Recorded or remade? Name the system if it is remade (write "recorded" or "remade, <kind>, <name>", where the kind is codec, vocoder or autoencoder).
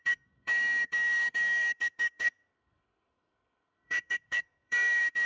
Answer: remade, codec, SNAC